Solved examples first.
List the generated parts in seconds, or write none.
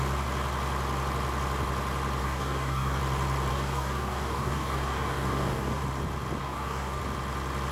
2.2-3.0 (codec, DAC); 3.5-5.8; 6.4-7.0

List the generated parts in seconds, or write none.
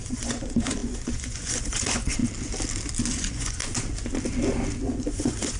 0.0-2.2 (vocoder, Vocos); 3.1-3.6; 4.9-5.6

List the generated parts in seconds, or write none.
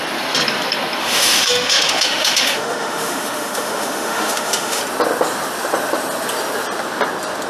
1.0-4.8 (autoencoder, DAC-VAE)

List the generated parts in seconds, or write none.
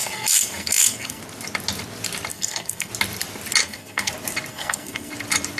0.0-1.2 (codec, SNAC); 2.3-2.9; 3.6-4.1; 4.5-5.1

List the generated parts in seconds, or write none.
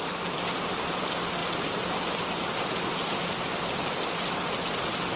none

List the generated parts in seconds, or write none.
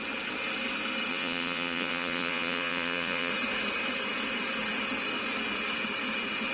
1.1-3.3 (vocoder, Vocos)